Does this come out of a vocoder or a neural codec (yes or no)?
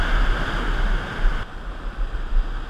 no